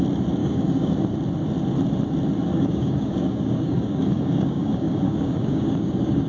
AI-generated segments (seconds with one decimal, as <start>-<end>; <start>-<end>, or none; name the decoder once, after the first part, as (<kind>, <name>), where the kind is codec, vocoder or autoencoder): 0.4-0.9 (codec, DAC); 2.5-6.3